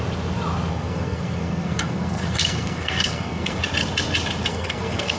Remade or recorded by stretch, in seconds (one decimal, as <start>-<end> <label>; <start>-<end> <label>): 0.0-0.7 recorded; 0.7-3.6 remade; 3.6-4.5 recorded; 4.5-5.2 remade